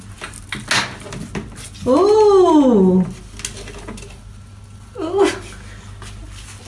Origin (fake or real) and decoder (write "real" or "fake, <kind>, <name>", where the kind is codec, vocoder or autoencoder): real